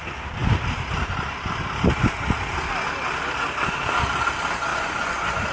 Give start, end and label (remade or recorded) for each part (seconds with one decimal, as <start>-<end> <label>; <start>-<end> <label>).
0.0-4.7 recorded; 4.7-5.5 remade